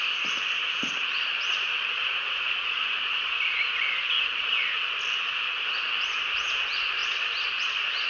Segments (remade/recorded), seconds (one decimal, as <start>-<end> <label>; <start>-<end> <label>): 0.0-0.6 recorded; 0.6-4.8 remade; 4.8-8.1 recorded

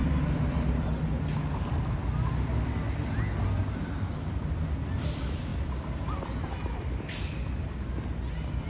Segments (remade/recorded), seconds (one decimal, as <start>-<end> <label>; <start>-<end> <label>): 0.0-8.7 recorded